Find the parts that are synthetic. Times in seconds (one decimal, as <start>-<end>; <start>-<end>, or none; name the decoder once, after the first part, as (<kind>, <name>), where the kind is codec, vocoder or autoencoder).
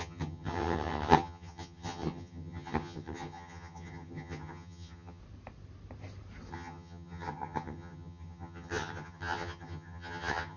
0.0-5.2 (vocoder, HiFi-GAN); 6.5-10.6